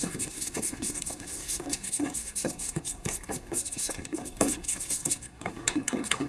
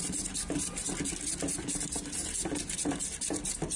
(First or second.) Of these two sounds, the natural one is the second